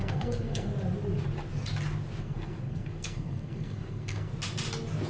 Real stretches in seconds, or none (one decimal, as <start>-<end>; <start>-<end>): 0.7-2.2; 4.3-5.1